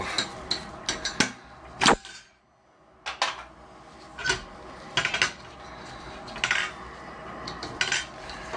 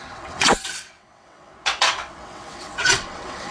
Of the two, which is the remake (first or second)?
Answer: second